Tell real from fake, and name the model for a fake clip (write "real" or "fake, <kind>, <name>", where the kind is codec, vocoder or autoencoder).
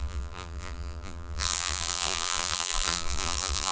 fake, vocoder, BigVGAN v2